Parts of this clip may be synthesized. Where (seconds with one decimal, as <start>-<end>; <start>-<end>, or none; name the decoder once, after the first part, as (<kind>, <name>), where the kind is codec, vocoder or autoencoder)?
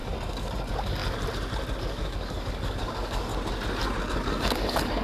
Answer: 0.0-1.0 (codec, DAC); 1.8-3.3; 4.0-5.0